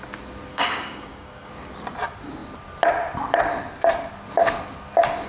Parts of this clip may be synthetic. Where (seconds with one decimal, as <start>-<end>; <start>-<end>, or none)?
0.5-1.5